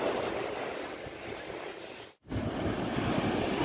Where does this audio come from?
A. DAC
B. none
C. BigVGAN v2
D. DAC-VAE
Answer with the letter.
B